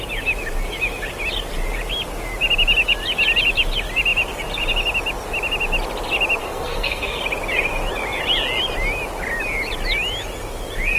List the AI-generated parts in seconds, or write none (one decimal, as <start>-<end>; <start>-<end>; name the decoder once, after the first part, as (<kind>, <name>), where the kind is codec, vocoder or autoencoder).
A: 6.4-7.2 (codec, SNAC)